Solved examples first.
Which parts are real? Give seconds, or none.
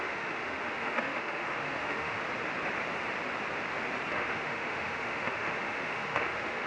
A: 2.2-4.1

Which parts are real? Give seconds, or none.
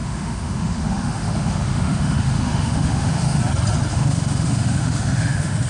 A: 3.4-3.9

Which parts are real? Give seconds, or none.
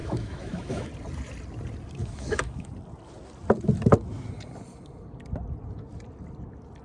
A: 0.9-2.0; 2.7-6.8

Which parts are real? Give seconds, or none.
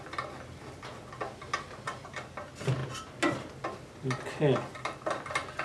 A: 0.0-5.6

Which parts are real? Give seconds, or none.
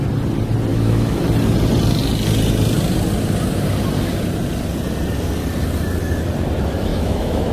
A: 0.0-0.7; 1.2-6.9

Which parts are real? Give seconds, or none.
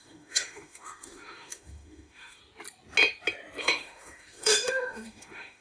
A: 2.4-3.6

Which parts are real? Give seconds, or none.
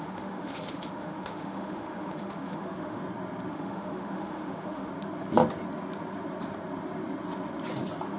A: 3.0-3.5; 4.9-8.2